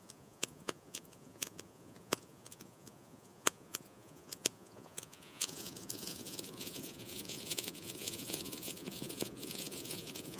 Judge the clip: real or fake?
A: fake